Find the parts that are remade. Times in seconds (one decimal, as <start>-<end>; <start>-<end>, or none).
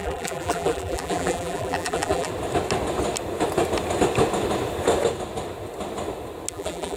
0.0-2.3; 6.5-7.0